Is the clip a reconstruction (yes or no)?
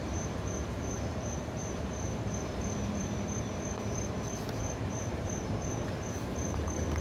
yes